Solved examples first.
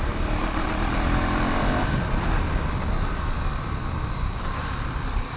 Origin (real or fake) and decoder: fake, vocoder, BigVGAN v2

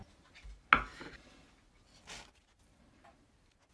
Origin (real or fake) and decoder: real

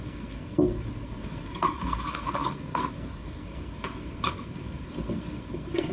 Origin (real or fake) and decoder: fake, codec, SNAC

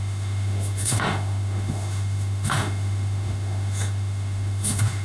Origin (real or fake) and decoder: fake, autoencoder, DAC-VAE